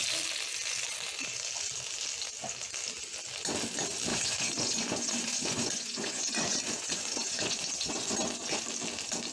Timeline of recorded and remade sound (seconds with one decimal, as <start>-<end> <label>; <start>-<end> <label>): 0.0-4.1 recorded; 4.1-8.6 remade; 8.6-9.3 recorded

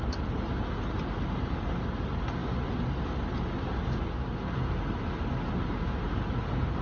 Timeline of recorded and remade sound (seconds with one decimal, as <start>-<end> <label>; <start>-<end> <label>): 0.0-6.8 recorded

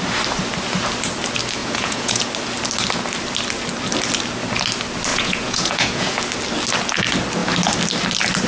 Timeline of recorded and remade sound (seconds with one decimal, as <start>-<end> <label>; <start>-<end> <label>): 0.0-1.6 recorded; 1.6-2.2 remade; 2.2-5.1 recorded; 5.1-6.2 remade; 6.2-8.5 recorded